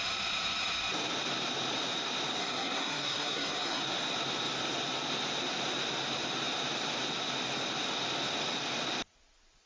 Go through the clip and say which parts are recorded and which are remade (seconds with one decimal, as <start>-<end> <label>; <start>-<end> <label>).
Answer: 0.0-2.4 recorded; 2.4-3.8 remade; 3.8-9.7 recorded